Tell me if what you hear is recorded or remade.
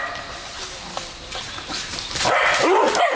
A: recorded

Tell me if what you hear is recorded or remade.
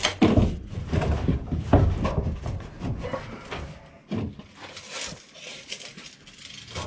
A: recorded